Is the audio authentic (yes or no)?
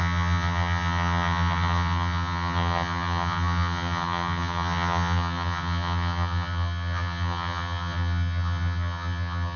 no